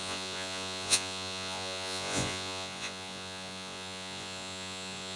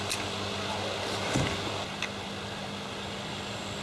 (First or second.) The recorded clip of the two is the second